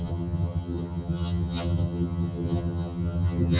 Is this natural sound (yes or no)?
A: no